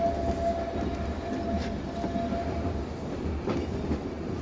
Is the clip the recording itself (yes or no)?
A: yes